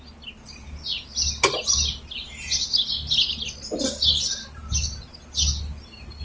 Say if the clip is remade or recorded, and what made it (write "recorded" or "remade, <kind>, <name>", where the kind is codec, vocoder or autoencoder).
recorded